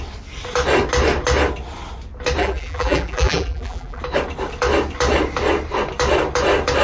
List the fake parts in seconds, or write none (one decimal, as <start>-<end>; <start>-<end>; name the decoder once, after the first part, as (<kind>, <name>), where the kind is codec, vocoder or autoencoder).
2.4-4.0 (vocoder, BigVGAN v2)